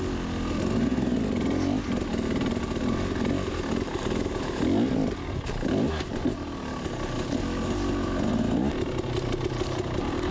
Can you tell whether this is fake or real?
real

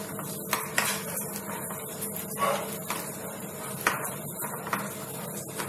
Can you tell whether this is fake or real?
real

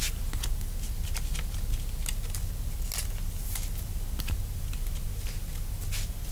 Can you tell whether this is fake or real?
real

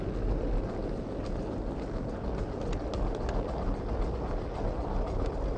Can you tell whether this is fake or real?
real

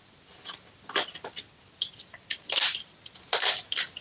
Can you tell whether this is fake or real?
real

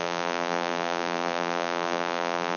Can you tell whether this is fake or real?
fake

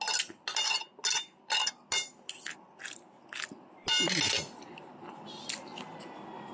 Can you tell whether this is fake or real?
real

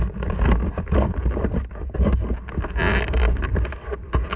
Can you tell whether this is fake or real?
real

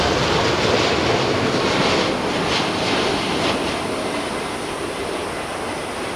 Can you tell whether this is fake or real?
fake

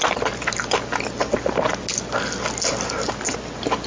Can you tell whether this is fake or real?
real